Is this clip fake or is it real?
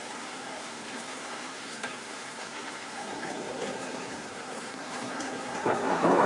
fake